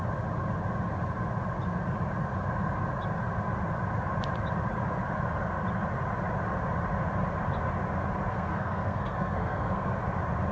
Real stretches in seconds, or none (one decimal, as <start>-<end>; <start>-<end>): 0.0-8.3; 9.9-10.5